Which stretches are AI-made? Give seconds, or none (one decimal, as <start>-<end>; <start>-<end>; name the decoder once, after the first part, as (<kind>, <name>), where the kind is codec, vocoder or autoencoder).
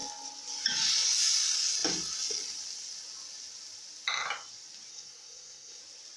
4.9-5.8 (codec, SNAC)